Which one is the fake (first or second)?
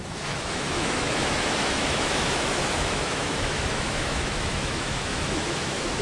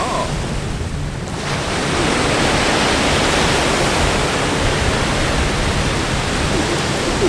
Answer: first